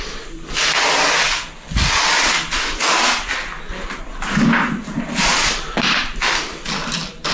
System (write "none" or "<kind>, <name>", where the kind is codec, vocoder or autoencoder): vocoder, BigVGAN v2